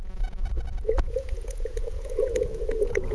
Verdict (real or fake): fake